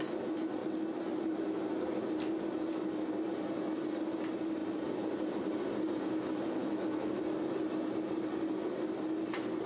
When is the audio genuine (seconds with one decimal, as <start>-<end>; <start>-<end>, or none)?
0.0-6.6; 7.2-9.7